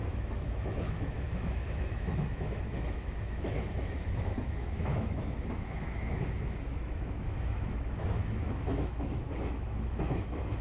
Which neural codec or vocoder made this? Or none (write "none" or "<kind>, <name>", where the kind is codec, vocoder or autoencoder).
autoencoder, DAC-VAE